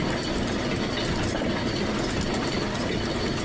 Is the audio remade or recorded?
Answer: recorded